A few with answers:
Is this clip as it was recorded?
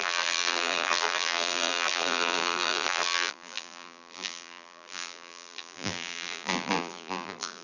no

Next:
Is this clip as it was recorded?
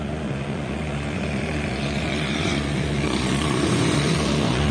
no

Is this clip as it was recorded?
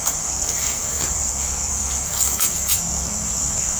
no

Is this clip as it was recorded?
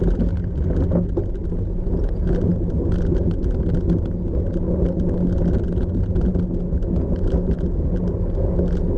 yes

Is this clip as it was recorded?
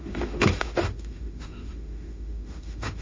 no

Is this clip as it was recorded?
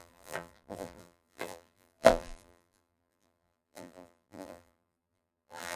no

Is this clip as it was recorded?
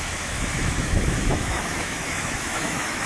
no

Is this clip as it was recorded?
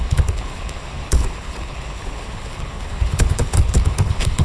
no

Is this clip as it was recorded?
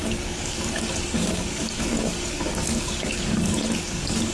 no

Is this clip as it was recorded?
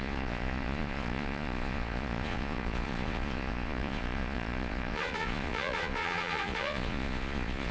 no